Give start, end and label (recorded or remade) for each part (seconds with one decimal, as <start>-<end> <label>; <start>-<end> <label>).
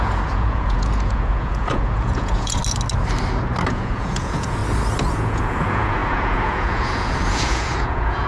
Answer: 0.0-2.6 remade; 2.6-3.7 recorded; 3.7-4.6 remade; 4.6-5.1 recorded; 5.1-8.3 remade